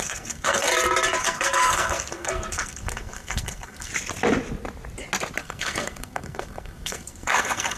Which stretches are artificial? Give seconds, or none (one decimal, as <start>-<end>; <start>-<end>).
0.0-0.7; 1.2-3.9; 5.4-7.8